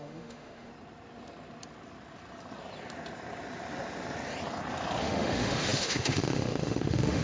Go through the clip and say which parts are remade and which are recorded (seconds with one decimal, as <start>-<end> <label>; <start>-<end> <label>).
0.0-0.7 remade; 0.7-5.0 recorded; 5.0-7.2 remade